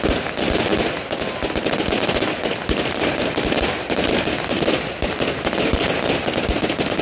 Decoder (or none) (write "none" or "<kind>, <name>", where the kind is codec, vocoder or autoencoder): none